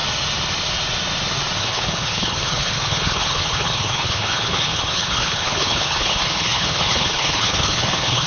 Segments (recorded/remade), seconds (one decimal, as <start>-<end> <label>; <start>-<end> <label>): 0.0-1.6 recorded; 1.6-8.3 remade